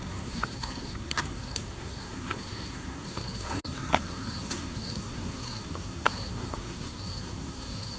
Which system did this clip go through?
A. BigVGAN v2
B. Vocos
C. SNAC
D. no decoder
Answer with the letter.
C